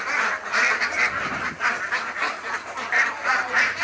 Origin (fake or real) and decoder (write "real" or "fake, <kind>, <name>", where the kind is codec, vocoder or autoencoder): real